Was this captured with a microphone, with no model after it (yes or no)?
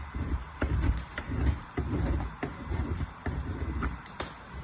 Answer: no